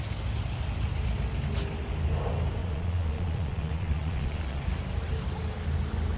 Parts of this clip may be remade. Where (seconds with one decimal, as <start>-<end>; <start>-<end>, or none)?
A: 2.6-4.6